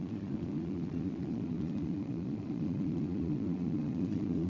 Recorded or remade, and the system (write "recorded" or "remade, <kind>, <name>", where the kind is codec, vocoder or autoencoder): remade, vocoder, Vocos